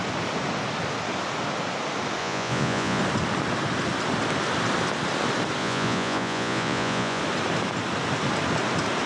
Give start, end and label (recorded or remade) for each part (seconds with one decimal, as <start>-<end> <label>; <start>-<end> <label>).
0.0-2.2 recorded; 2.2-3.0 remade; 3.0-5.6 recorded; 5.6-7.2 remade; 7.2-9.1 recorded